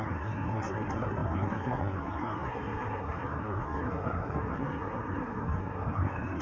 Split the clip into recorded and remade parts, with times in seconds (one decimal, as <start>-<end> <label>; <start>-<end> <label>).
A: 0.0-6.4 remade